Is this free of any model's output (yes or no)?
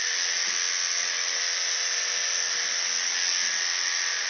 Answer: yes